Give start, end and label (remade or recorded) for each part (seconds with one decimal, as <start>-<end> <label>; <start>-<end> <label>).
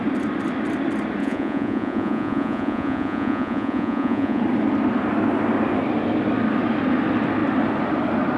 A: 0.0-1.2 recorded; 1.2-4.4 remade; 4.4-8.4 recorded